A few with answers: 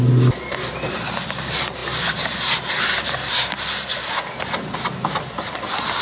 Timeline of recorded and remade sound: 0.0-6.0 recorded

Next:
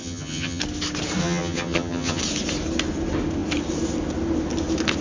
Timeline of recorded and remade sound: 0.0-0.6 remade; 0.6-1.2 recorded; 1.2-2.2 remade; 2.2-5.0 recorded

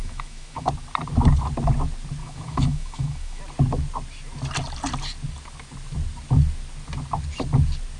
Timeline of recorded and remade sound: 0.0-0.7 remade; 0.7-2.2 recorded; 2.2-3.4 remade; 3.4-8.0 recorded

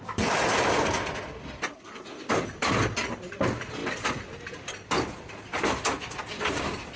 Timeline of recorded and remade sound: 0.0-7.0 recorded

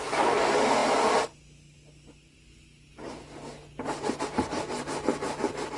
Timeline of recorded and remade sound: 0.0-5.8 recorded

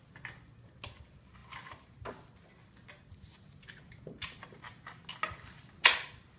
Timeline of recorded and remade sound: 0.0-6.4 recorded

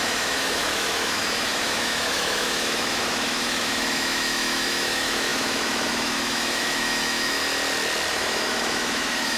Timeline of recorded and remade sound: 0.0-7.4 remade; 7.4-8.1 recorded; 8.1-9.4 remade

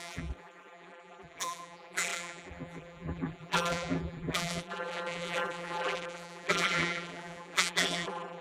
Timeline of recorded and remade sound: 0.0-8.4 remade